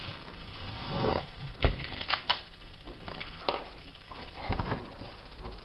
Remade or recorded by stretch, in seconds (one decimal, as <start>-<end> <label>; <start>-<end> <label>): 0.0-3.4 remade; 3.4-3.8 recorded; 3.8-4.4 remade; 4.4-5.6 recorded